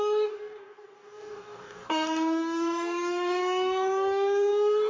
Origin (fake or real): fake